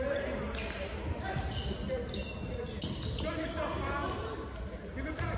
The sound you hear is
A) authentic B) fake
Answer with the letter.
A